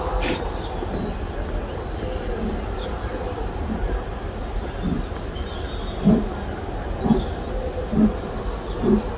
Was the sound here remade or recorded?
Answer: recorded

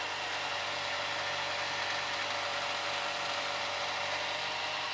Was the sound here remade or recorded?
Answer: recorded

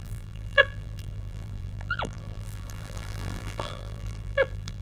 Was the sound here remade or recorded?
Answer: remade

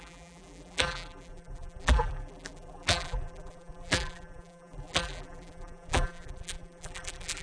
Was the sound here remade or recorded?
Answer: remade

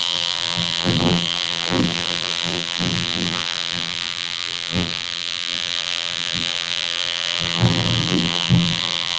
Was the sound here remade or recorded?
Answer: remade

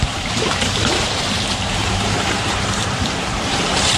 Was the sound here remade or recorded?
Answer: remade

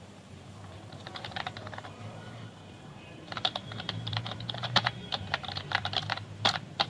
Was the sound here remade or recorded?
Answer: remade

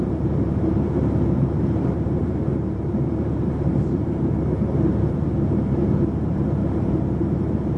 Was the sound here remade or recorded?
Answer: remade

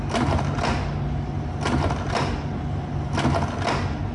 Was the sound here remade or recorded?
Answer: recorded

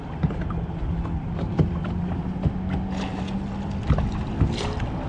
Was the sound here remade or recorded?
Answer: recorded